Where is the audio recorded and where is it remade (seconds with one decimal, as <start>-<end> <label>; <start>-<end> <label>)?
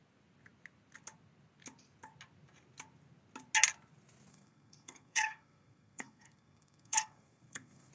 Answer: 0.0-4.3 recorded; 4.3-7.9 remade